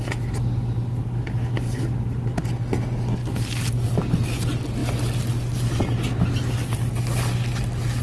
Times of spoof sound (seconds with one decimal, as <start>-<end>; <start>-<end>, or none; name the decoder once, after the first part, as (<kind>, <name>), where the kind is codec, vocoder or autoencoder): none